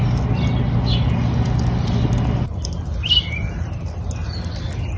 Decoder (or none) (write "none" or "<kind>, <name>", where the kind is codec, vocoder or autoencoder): none